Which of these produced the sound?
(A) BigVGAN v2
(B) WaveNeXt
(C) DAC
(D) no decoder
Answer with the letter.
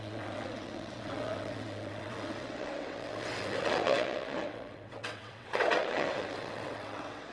B